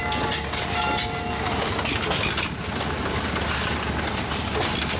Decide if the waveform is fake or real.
real